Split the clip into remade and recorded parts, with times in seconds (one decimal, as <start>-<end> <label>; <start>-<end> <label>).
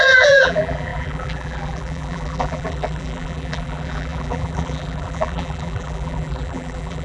0.0-7.0 remade